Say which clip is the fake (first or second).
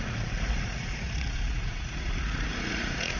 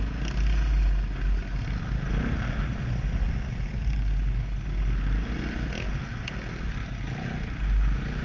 first